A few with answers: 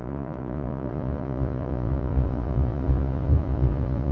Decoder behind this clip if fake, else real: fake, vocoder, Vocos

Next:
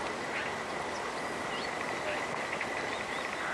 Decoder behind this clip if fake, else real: real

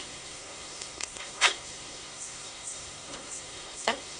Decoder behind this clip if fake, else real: fake, codec, SNAC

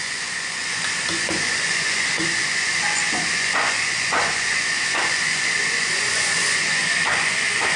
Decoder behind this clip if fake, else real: fake, vocoder, Vocos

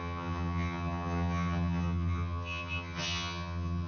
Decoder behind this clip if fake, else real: fake, vocoder, HiFi-GAN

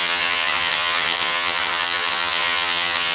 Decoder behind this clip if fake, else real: fake, vocoder, HiFi-GAN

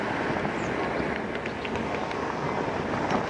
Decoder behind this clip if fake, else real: real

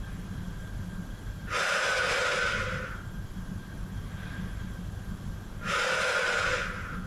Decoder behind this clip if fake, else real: real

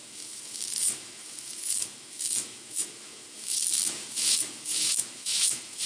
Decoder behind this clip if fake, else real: fake, autoencoder, DAC-VAE